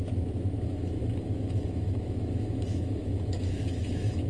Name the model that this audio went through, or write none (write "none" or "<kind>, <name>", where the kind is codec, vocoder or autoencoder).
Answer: autoencoder, DAC-VAE